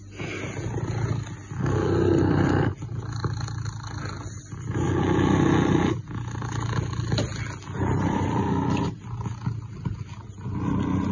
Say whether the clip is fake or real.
real